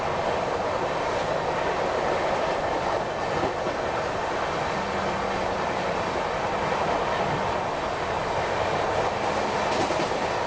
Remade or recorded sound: recorded